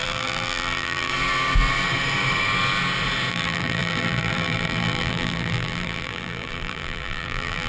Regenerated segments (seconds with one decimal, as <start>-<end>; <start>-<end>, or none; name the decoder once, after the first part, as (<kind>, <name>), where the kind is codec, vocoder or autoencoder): 0.0-1.1 (vocoder, BigVGAN v2); 3.3-7.7